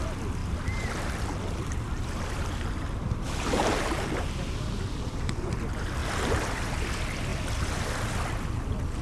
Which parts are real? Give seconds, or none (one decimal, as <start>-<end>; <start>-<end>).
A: 0.0-0.4; 5.3-6.0; 6.7-9.0